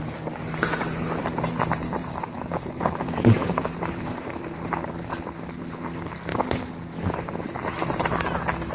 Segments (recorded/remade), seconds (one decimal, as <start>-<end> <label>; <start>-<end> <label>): 0.0-2.0 recorded; 2.0-4.9 remade; 4.9-8.7 recorded